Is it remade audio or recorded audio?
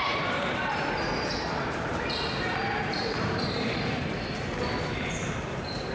remade